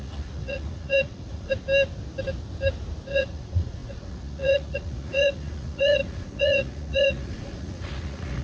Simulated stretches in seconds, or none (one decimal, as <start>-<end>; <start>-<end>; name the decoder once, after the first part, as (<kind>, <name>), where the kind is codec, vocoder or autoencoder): 0.0-1.5 (vocoder, Vocos); 3.1-8.4